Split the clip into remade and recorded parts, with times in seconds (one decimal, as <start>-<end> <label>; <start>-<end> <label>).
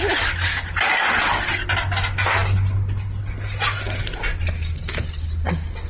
0.0-5.9 recorded